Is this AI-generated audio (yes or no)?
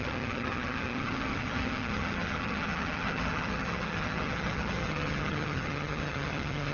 yes